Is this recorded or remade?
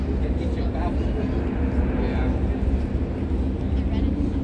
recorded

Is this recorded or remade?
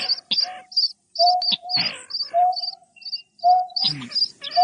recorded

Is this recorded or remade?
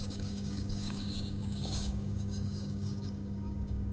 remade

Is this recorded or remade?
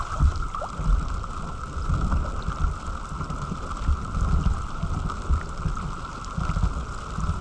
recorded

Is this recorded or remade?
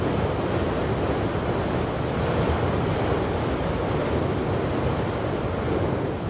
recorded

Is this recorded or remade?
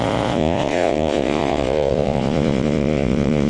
remade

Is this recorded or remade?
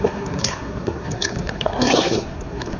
remade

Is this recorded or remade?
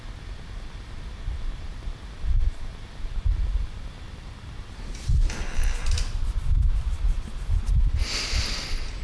recorded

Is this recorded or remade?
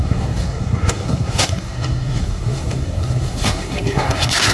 remade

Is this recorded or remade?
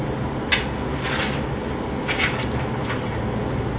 recorded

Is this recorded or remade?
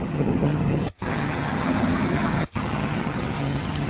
remade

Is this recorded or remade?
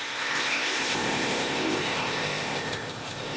remade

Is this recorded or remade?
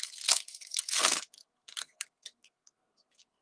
remade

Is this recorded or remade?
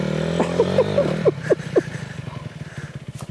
recorded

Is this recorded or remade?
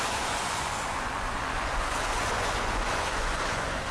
remade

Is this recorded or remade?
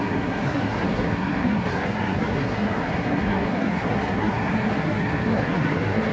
remade